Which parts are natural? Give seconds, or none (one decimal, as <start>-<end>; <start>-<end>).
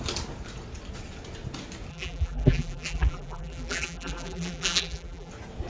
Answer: 0.0-1.9; 5.3-5.7